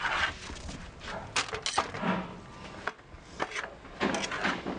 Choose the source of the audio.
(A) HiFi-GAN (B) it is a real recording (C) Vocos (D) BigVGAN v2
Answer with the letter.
B